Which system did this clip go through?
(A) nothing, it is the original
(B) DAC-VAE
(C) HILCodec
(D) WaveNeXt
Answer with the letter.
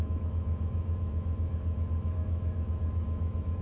B